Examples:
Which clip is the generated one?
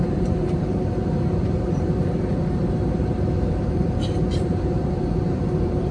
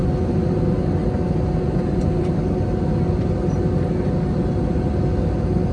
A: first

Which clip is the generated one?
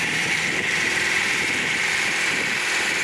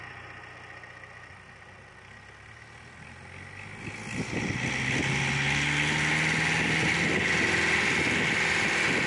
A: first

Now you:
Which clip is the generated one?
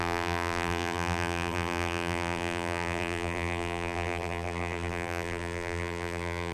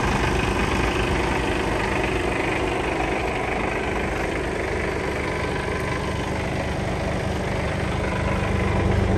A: first